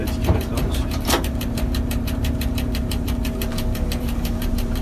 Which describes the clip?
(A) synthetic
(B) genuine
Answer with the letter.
A